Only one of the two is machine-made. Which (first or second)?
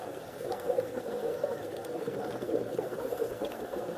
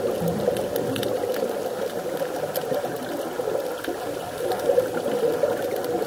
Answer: first